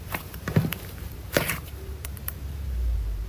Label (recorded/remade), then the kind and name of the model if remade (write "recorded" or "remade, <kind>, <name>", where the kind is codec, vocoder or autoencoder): remade, vocoder, BigVGAN v2